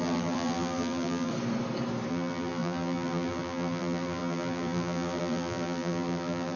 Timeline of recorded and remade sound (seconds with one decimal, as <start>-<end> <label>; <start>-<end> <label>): 0.0-1.3 remade; 1.3-2.1 recorded; 2.1-6.6 remade